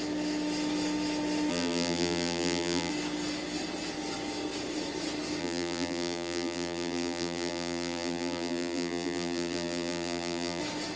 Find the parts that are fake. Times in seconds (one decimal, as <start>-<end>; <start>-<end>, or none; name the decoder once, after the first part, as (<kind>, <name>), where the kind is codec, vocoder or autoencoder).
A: 1.5-2.9 (vocoder, BigVGAN v2); 5.4-10.6